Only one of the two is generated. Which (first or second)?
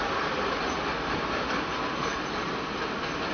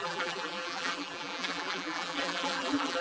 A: second